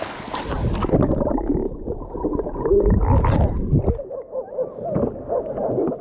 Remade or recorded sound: recorded